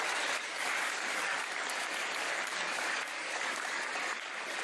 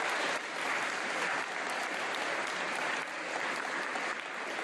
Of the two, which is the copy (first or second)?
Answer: first